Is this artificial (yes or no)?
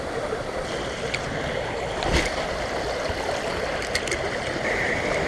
no